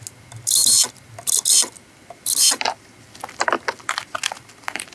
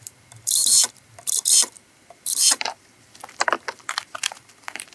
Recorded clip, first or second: first